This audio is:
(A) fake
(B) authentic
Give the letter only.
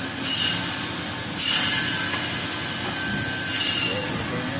B